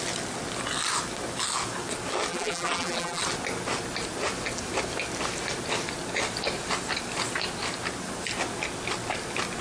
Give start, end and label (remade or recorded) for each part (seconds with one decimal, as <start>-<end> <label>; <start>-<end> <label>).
0.0-2.3 recorded; 2.3-3.2 remade; 3.2-9.6 recorded